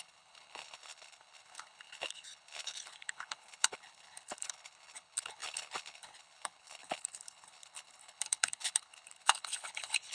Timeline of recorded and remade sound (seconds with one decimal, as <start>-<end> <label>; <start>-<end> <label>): 0.0-10.1 remade